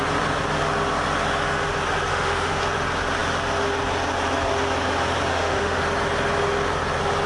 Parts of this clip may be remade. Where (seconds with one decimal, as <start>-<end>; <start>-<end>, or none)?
2.1-2.6; 5.3-5.8